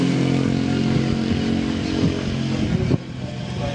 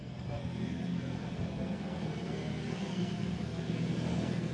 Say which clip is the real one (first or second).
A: first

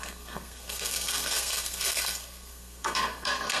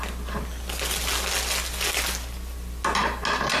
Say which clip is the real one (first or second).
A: second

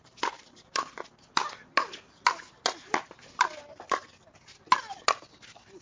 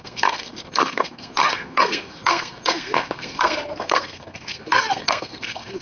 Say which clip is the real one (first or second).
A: first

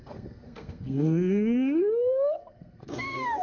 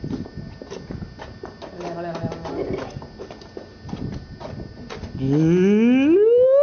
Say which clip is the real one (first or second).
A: second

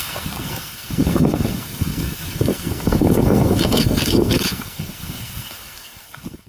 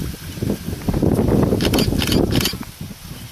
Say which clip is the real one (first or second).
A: second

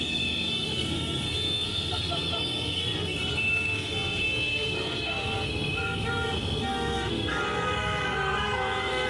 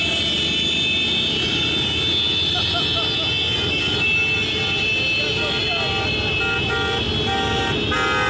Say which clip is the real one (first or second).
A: second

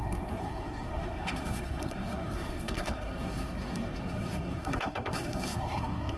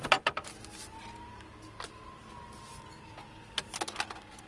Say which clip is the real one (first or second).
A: second